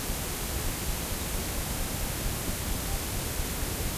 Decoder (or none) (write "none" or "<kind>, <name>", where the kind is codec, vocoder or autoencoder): none